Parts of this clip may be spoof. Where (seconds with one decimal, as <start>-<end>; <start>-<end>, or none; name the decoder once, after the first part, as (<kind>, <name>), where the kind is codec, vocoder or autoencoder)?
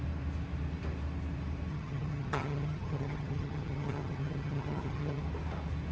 1.7-5.2 (vocoder, HiFi-GAN)